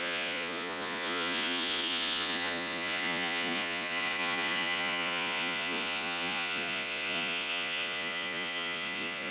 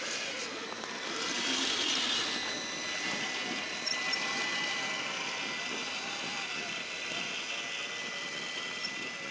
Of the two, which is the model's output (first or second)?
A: first